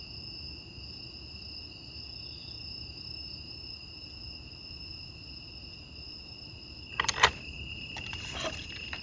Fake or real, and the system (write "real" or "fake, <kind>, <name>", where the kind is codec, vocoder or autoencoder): real